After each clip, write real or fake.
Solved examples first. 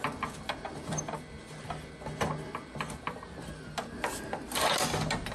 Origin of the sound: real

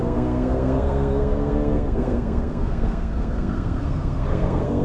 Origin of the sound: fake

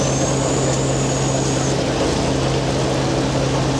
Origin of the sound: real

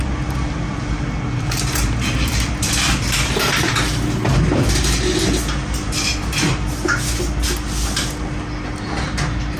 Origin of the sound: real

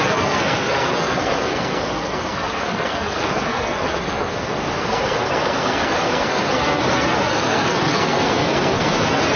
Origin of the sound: fake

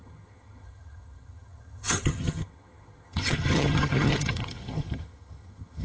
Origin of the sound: fake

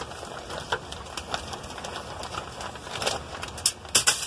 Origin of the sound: real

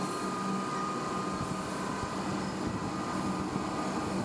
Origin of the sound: real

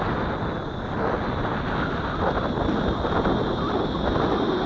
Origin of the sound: real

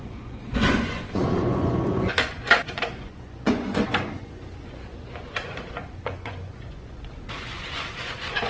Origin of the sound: fake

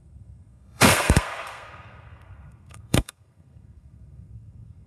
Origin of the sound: fake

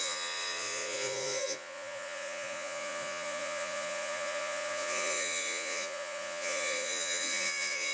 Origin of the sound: fake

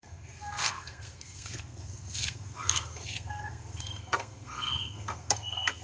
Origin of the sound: fake